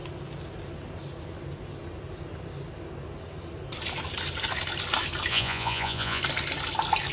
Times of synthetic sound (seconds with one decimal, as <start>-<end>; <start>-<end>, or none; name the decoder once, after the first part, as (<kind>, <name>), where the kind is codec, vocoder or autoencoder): 5.3-6.2 (vocoder, Vocos)